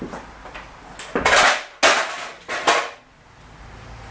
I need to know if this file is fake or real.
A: real